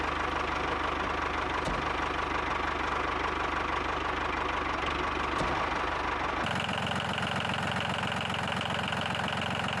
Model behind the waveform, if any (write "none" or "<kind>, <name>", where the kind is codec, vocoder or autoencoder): none